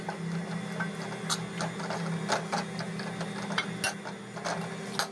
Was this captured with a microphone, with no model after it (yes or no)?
yes